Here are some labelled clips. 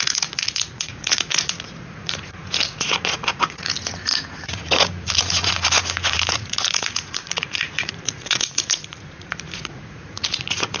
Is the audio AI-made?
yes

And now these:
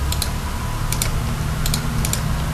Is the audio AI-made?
no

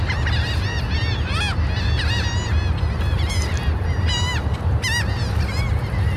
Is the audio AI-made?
no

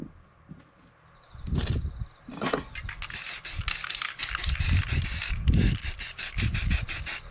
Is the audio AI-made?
no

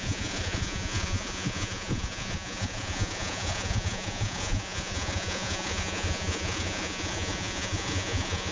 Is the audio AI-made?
yes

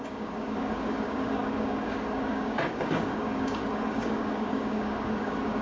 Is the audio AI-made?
yes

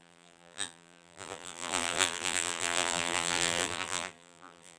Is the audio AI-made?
yes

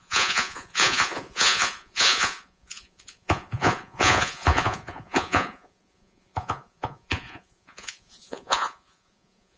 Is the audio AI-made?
yes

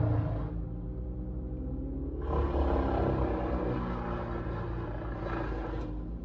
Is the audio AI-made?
no